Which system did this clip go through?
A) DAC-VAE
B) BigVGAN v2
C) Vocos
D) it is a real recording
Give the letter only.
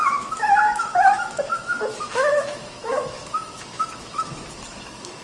A